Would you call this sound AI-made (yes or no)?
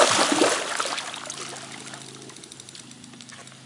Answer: no